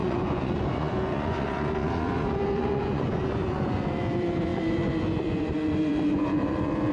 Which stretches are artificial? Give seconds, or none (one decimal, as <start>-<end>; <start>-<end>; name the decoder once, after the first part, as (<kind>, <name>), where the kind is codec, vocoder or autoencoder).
0.0-6.9 (vocoder, Vocos)